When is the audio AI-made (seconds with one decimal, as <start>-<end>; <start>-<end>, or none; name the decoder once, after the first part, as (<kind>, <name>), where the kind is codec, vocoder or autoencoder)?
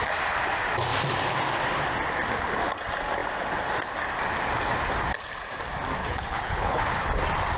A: 6.0-6.8 (codec, HILCodec)